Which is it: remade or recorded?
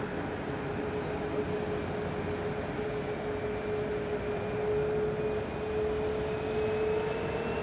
recorded